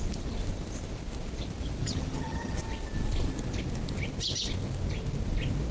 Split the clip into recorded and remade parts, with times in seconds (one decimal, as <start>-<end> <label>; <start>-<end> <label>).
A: 0.0-1.8 recorded; 1.8-2.6 remade; 2.6-5.7 recorded